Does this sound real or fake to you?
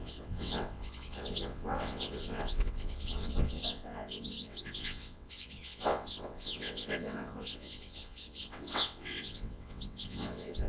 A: fake